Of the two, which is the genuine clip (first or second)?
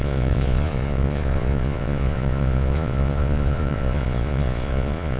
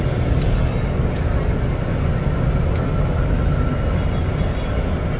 second